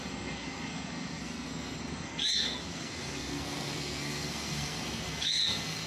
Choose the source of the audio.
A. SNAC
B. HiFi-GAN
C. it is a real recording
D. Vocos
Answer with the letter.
A